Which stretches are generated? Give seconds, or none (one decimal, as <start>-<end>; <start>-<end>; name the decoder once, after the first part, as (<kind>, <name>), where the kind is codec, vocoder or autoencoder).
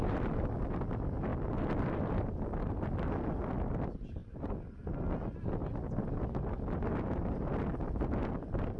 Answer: 1.3-3.5 (vocoder, BigVGAN v2)